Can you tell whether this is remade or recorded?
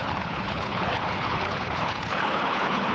remade